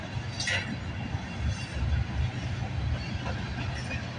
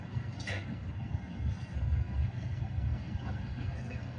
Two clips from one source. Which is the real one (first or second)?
first